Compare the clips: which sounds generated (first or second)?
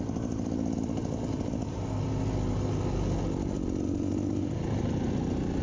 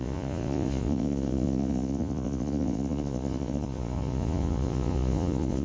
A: second